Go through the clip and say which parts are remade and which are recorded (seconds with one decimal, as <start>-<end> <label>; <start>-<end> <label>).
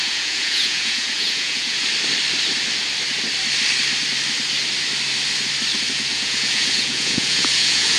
0.0-1.8 remade; 1.8-6.1 recorded; 6.1-8.0 remade